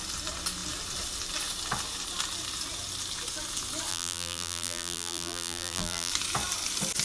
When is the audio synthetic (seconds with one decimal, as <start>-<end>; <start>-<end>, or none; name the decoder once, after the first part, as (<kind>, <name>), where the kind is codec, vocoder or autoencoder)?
3.9-6.1 (vocoder, BigVGAN v2)